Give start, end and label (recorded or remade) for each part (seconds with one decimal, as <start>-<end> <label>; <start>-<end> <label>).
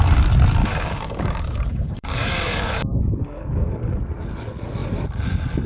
0.0-0.6 recorded; 0.6-4.0 remade; 4.0-5.7 recorded